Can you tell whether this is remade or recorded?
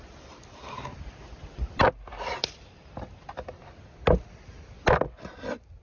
recorded